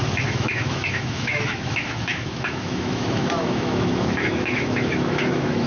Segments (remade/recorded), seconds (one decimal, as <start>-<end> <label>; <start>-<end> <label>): 0.0-5.7 remade